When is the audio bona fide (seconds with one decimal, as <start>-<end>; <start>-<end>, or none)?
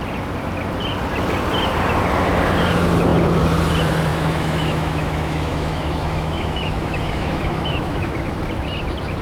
0.0-4.1; 8.1-9.2